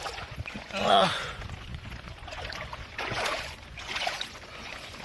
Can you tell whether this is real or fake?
fake